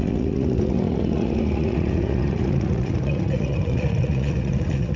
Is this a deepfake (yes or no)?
yes